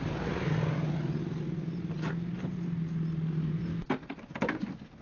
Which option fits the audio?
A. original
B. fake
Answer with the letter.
A